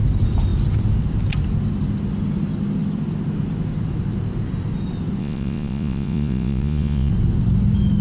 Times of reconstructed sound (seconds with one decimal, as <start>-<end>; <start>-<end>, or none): 5.2-7.1